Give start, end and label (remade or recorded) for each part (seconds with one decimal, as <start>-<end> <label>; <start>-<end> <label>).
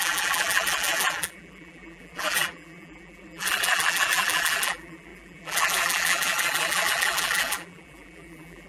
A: 0.0-8.7 remade